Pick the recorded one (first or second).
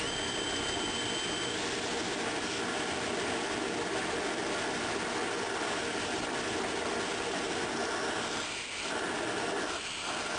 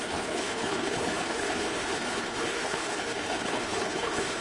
first